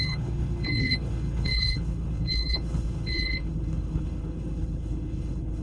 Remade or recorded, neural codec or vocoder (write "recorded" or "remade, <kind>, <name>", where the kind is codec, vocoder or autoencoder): remade, codec, HILCodec